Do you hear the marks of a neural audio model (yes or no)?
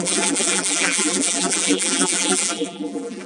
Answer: yes